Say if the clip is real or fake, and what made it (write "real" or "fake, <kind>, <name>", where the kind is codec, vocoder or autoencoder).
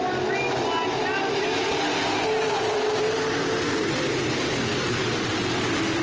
real